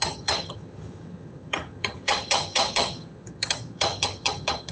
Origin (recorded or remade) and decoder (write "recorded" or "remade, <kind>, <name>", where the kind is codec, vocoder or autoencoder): remade, vocoder, HiFi-GAN